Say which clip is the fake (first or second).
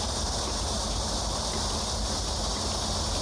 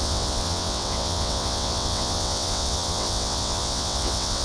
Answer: second